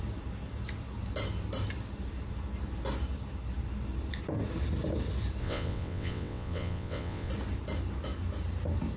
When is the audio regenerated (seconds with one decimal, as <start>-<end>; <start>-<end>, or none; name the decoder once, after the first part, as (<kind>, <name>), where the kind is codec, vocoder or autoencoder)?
5.4-7.3 (vocoder, WaveNeXt)